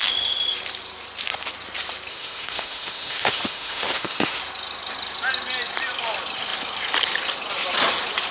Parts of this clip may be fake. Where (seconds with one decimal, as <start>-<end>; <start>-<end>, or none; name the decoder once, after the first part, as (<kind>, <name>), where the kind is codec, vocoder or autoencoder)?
2.1-4.4 (autoencoder, DAC-VAE)